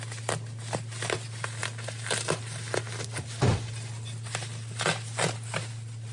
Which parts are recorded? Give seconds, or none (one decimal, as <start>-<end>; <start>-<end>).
0.0-6.1